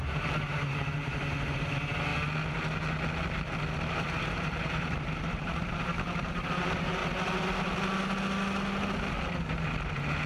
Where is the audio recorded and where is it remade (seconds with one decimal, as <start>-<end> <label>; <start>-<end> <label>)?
0.0-2.1 remade; 2.1-3.8 recorded; 3.8-7.0 remade; 7.0-9.9 recorded; 9.9-10.3 remade